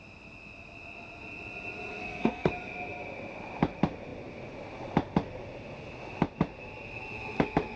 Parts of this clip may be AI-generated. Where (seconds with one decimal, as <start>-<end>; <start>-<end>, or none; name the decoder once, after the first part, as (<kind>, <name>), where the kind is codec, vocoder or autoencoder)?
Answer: 2.0-2.5 (codec, SNAC)